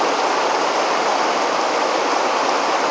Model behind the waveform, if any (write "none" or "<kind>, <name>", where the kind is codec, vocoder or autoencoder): none